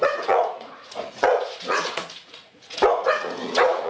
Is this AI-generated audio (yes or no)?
yes